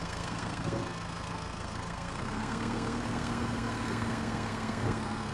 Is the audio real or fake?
fake